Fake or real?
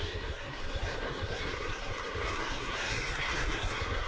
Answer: fake